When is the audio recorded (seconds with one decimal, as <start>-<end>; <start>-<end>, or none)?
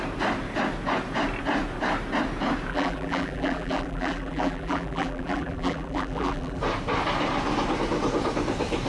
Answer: 0.0-2.7; 6.6-8.9